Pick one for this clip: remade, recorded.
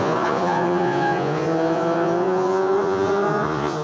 remade